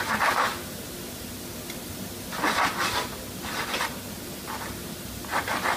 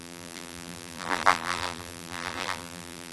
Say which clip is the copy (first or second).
second